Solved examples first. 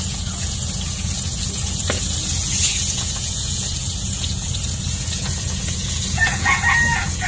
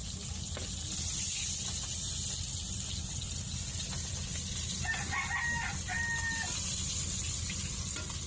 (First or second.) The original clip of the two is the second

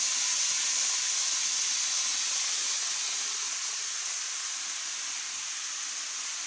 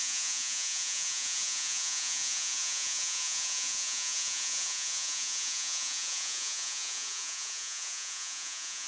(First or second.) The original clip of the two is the first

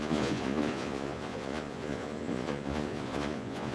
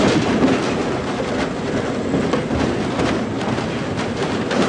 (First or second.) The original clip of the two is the second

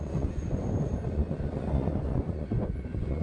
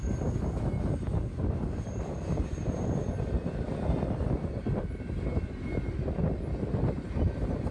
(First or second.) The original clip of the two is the second